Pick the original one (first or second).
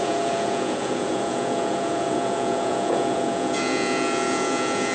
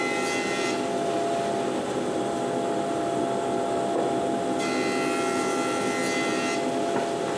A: second